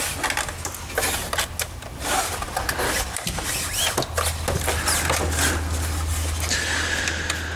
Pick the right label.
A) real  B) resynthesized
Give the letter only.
A